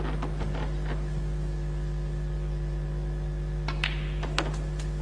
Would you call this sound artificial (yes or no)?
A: no